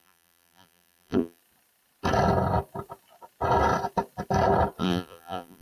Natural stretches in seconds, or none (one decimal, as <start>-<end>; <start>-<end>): 1.4-4.8